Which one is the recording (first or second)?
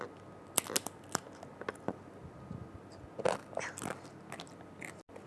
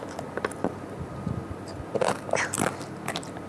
first